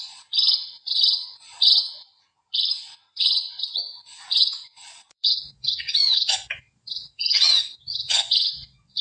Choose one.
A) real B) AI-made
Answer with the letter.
B